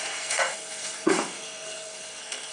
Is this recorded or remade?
remade